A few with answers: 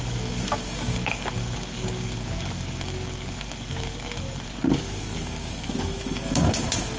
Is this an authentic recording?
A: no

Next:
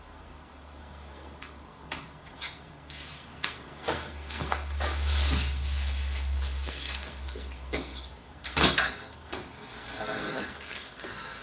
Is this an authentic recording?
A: no